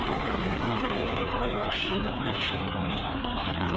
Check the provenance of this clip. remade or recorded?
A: remade